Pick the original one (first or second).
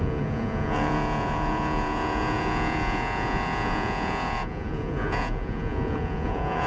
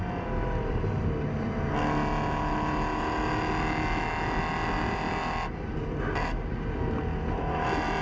second